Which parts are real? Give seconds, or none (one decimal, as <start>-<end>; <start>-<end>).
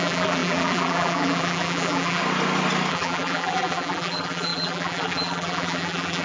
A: 2.2-2.9